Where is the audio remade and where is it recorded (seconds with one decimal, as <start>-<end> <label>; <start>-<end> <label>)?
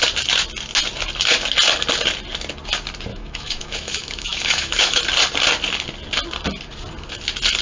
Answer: 0.0-3.1 recorded; 3.1-5.0 remade; 5.0-7.6 recorded